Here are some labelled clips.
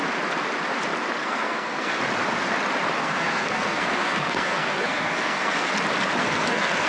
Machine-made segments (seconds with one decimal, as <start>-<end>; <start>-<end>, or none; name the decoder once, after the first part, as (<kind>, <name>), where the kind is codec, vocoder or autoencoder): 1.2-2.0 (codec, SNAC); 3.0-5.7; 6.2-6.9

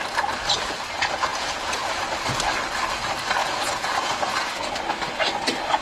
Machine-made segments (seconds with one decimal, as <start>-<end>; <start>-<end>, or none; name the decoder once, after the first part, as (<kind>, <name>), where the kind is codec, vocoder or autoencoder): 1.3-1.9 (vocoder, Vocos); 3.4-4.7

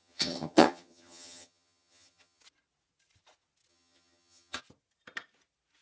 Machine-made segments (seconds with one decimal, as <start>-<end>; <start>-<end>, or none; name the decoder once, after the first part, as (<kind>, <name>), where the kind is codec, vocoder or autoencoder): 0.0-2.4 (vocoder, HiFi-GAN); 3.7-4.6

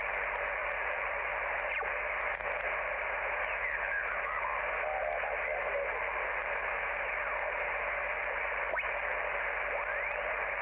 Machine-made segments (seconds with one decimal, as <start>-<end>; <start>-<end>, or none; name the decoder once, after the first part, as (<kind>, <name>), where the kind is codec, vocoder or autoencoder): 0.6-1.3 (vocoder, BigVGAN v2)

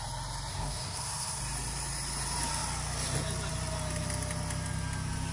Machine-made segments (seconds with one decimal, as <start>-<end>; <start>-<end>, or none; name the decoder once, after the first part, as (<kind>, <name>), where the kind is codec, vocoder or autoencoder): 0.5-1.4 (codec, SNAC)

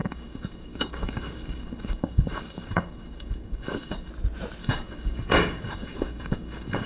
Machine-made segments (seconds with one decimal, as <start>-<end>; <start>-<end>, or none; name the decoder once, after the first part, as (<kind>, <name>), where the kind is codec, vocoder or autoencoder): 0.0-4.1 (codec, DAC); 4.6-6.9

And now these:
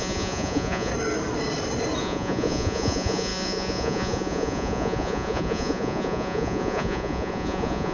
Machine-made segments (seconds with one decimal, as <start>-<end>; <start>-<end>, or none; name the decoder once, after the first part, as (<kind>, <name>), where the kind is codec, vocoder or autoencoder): 0.0-0.9 (vocoder, Vocos); 2.0-7.9

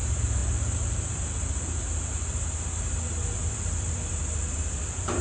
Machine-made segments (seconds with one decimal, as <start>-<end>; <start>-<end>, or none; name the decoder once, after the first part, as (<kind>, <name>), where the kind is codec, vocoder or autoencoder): 0.0-0.4 (vocoder, BigVGAN v2); 3.5-5.2